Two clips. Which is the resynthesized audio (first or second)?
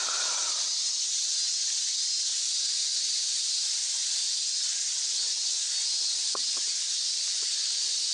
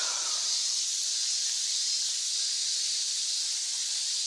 second